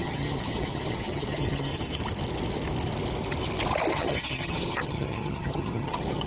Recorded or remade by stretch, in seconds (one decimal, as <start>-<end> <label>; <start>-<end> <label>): 0.0-1.7 remade; 1.7-3.9 recorded; 3.9-6.3 remade